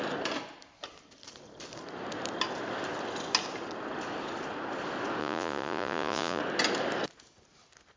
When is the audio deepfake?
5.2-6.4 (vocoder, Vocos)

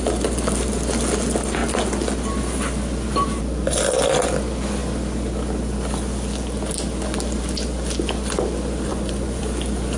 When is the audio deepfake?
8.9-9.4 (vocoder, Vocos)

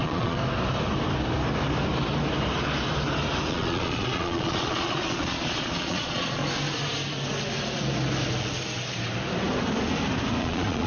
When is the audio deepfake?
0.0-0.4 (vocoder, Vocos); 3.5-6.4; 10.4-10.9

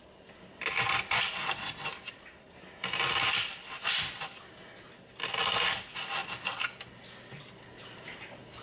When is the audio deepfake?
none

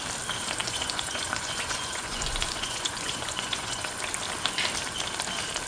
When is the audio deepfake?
0.6-4.0 (vocoder, Vocos)

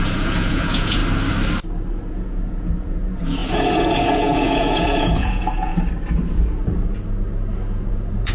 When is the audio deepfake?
0.0-1.0 (vocoder, Vocos); 2.1-5.7; 7.8-8.3